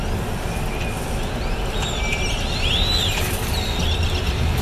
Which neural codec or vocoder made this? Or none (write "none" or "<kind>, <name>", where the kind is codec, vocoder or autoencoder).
none